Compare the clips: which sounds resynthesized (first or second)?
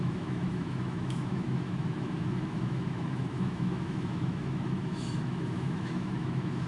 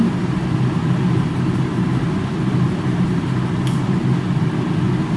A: first